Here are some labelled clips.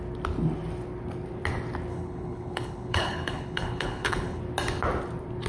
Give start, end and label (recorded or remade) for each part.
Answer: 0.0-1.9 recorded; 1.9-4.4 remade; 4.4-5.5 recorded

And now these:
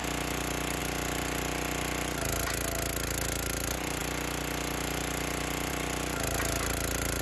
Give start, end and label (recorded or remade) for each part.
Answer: 0.0-7.2 recorded